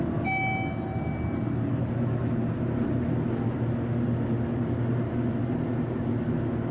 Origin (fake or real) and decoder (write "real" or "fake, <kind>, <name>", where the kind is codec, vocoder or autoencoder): real